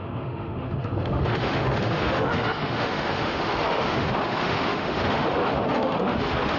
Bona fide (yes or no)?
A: no